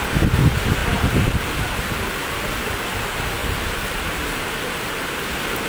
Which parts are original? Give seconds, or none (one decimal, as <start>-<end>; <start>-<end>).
0.0-3.4; 5.3-5.7